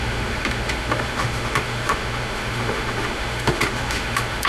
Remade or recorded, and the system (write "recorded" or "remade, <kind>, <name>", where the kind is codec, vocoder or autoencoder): remade, autoencoder, DAC-VAE